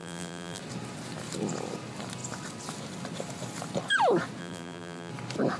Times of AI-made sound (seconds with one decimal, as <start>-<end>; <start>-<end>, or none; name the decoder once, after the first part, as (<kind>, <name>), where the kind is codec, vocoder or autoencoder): 0.0-0.6 (vocoder, BigVGAN v2); 4.4-5.1

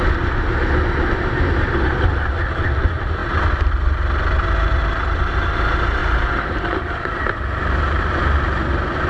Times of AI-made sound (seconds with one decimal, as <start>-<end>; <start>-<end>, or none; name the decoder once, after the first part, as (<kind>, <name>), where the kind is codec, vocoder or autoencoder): 6.0-8.0 (vocoder, BigVGAN v2)

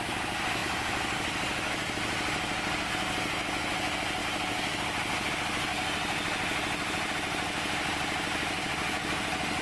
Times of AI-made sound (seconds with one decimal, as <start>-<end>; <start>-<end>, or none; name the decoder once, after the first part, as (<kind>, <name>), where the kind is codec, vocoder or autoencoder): 0.6-2.9 (vocoder, BigVGAN v2); 5.7-7.1

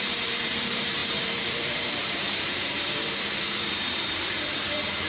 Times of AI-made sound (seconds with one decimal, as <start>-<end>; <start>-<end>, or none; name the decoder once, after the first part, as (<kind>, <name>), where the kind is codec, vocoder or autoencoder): 0.0-5.1 (vocoder, BigVGAN v2)

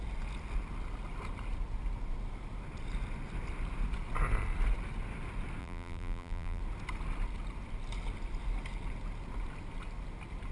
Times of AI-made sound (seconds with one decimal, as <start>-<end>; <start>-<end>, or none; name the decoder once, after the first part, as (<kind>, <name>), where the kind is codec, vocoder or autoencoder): 5.6-6.6 (vocoder, BigVGAN v2)

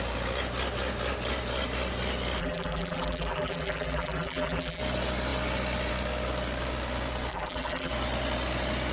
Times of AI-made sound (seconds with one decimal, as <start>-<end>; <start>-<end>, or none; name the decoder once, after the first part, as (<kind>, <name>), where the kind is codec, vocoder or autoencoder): 2.4-4.8 (vocoder, BigVGAN v2); 7.3-7.9

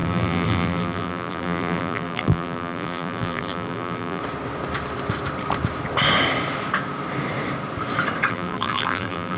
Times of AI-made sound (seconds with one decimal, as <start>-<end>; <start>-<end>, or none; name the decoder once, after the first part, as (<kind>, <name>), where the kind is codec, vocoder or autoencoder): 0.0-4.2 (vocoder, BigVGAN v2); 8.3-9.4

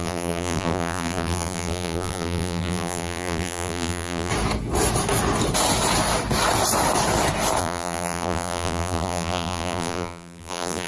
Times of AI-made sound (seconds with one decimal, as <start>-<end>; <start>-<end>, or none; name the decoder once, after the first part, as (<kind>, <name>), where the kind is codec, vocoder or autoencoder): 0.0-4.3 (vocoder, BigVGAN v2); 7.6-10.9